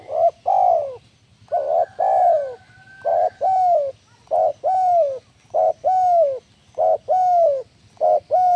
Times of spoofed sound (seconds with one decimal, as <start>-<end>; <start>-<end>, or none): none